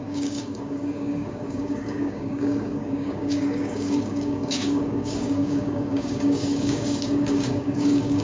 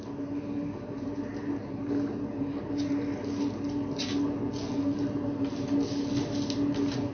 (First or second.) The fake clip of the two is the first